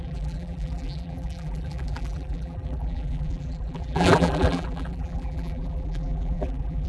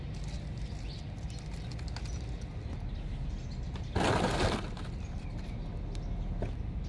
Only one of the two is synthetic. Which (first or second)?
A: first